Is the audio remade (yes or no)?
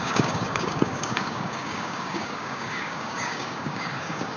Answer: yes